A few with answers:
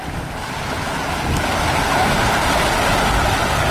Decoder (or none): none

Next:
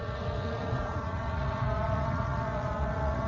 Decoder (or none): vocoder, Vocos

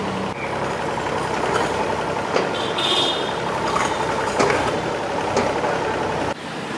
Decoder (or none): vocoder, BigVGAN v2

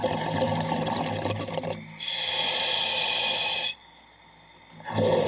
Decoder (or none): none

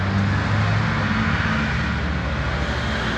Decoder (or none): none